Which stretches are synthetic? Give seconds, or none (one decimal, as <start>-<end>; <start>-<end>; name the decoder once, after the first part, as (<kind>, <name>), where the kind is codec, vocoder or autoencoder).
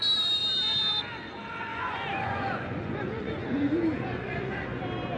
1.7-4.8 (vocoder, Vocos)